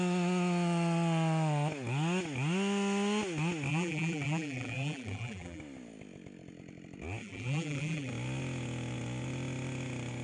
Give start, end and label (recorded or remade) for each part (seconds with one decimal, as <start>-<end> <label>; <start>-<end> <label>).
0.0-3.7 recorded; 3.7-5.6 remade; 5.6-7.2 recorded; 7.2-8.1 remade; 8.1-10.2 recorded